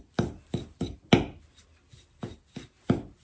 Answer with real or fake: real